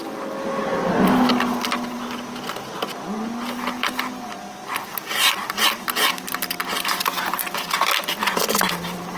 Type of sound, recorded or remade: recorded